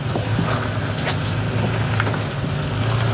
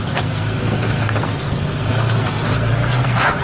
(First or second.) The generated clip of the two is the second